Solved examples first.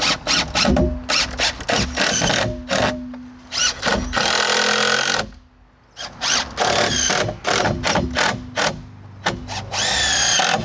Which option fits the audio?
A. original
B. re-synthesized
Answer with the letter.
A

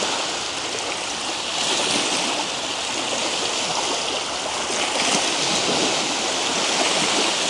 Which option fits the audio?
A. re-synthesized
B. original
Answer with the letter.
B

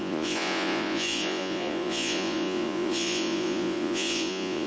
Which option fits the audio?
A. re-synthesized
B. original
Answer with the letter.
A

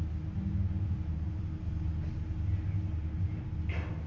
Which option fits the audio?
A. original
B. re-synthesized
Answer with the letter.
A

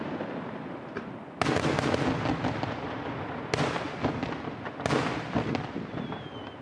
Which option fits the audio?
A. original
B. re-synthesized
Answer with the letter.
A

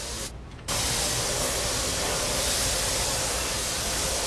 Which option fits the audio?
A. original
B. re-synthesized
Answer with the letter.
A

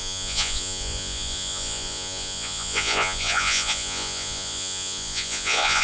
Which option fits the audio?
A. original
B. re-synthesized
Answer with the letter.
B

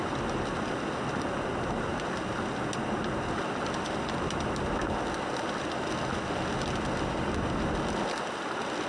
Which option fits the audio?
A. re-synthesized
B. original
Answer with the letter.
B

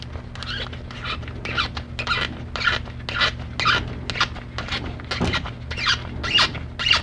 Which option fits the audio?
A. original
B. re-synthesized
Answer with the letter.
A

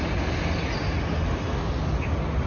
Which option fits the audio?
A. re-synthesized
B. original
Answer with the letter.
B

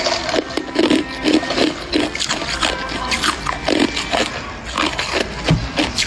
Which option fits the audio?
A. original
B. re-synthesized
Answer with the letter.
A